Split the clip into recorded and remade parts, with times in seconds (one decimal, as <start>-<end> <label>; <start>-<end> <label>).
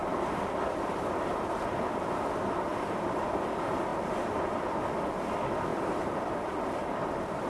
0.0-1.1 remade; 1.1-2.7 recorded; 2.7-3.3 remade; 3.3-3.9 recorded; 3.9-4.6 remade; 4.6-5.7 recorded; 5.7-6.3 remade; 6.3-7.5 recorded